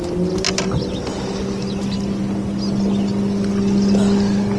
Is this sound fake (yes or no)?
no